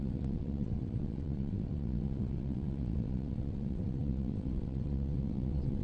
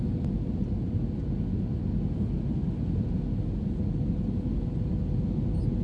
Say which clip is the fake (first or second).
first